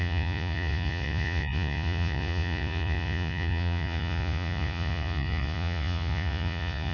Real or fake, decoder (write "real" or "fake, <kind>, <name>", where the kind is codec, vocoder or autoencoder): fake, vocoder, Vocos